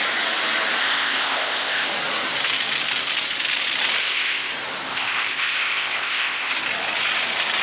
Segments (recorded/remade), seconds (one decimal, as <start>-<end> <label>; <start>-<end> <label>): 0.0-0.8 recorded; 0.8-1.9 remade; 1.9-4.0 recorded; 4.0-4.5 remade; 4.5-4.9 recorded; 4.9-6.5 remade; 6.5-7.6 recorded